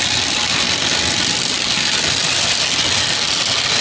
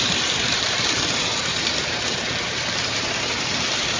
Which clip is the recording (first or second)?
first